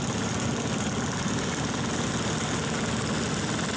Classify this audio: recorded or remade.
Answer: recorded